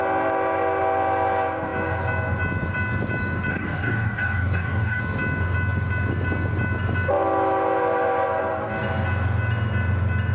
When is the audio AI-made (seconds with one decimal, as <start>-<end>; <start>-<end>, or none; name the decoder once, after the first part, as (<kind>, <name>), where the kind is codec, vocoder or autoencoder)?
3.5-5.0 (codec, DAC)